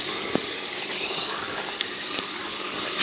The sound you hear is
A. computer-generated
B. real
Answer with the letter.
A